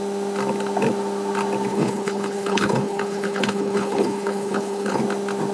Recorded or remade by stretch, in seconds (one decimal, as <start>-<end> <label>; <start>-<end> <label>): 0.0-1.7 recorded; 1.7-5.0 remade; 5.0-5.5 recorded